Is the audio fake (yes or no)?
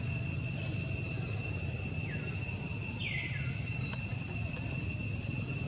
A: no